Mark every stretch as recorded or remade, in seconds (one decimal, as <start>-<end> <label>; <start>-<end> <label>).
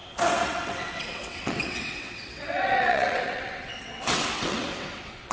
0.0-5.3 remade